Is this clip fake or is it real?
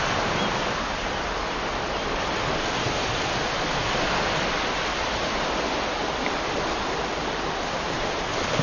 real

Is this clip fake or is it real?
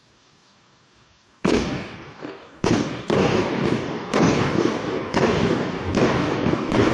fake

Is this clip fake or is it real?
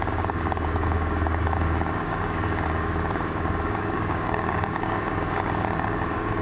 fake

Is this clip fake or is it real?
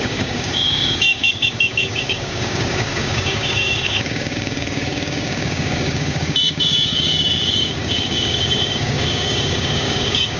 fake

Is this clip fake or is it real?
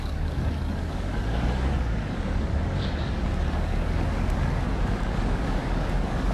fake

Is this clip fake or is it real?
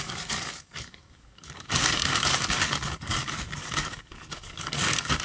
fake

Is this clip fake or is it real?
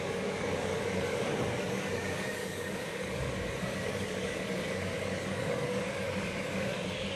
fake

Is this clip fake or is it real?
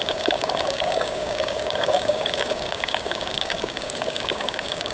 fake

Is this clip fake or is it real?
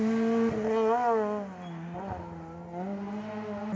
real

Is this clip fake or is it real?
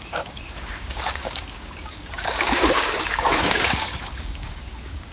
fake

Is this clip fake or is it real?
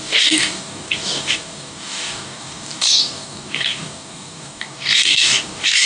fake